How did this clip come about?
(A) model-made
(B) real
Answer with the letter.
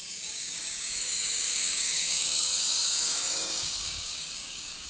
A